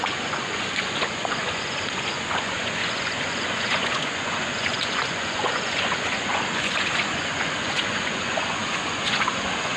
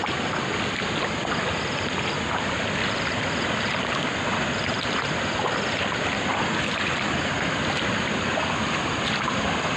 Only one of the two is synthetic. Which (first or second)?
first